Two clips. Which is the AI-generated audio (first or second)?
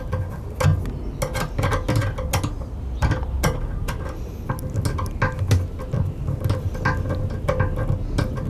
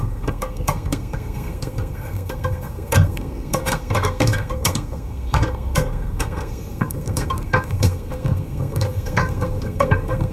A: second